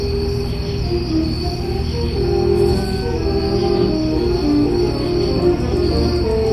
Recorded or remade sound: recorded